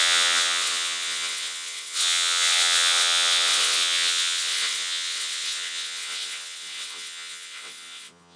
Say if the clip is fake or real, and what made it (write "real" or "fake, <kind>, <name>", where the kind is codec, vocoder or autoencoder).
fake, vocoder, WaveNeXt